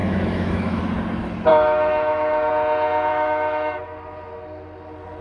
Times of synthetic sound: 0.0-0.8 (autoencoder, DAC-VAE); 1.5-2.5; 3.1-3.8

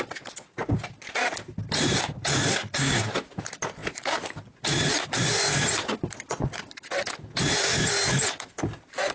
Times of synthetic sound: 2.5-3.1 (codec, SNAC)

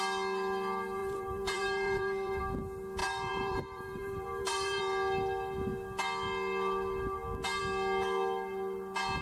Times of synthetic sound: 1.0-2.4 (vocoder, BigVGAN v2); 3.0-4.8